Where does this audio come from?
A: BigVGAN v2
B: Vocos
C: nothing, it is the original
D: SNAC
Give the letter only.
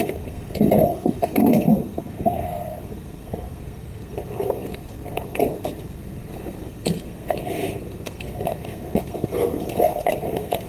D